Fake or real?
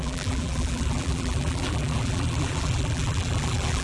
fake